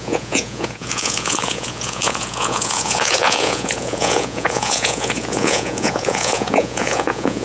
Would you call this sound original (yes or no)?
no